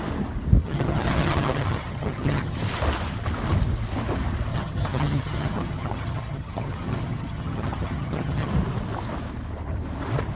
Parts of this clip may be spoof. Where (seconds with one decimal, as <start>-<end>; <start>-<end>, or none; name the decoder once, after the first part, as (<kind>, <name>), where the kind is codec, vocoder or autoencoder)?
0.6-2.6 (vocoder, HiFi-GAN); 4.5-8.5